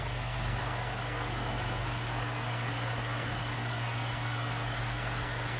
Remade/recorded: remade